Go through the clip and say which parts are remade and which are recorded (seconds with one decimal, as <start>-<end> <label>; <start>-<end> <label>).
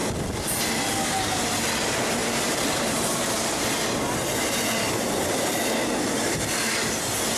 0.0-2.2 recorded; 2.2-3.9 remade; 3.9-7.4 recorded